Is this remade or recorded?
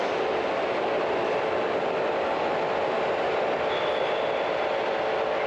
remade